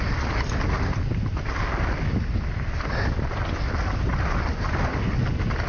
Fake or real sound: real